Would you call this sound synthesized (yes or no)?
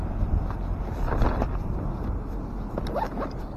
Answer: no